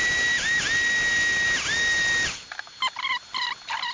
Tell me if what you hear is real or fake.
real